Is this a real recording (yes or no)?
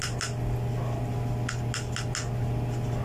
yes